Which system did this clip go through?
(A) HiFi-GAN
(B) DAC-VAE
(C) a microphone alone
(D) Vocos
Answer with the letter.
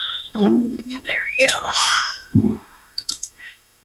B